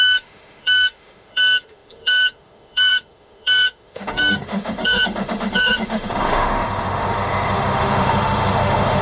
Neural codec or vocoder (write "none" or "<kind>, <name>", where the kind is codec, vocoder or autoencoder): autoencoder, DAC-VAE